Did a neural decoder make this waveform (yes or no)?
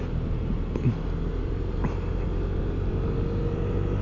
no